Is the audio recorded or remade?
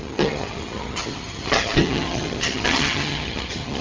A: remade